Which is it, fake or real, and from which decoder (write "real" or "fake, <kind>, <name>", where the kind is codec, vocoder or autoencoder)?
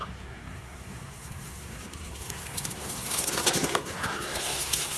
fake, codec, SNAC